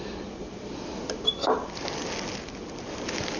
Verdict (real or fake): real